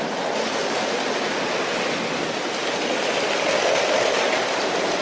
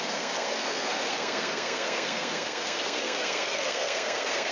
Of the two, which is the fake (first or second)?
second